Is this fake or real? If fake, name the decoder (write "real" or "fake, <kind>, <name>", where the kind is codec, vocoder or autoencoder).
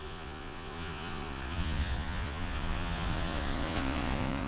fake, vocoder, Vocos